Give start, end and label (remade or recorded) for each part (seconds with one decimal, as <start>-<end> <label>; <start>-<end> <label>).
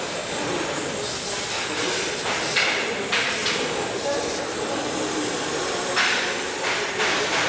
0.0-7.5 remade